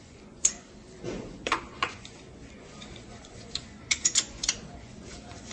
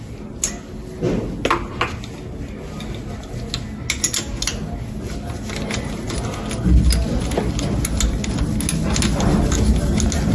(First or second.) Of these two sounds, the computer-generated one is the first